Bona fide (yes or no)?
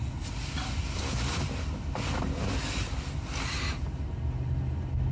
yes